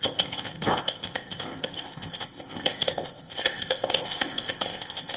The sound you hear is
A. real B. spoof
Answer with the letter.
B